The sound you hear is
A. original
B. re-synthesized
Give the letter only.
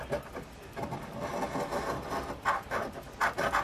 A